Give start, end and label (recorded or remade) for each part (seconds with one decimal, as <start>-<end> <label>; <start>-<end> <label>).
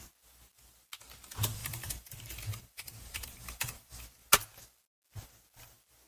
0.0-1.6 recorded; 1.6-3.9 remade; 3.9-6.1 recorded